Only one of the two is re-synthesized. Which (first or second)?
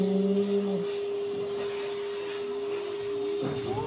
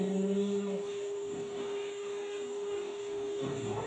second